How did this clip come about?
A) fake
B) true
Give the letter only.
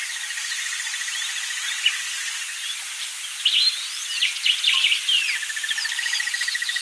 B